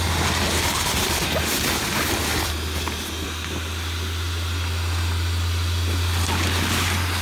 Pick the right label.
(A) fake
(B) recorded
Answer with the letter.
B